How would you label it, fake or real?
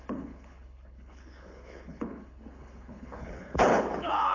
fake